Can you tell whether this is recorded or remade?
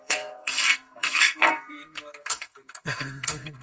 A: remade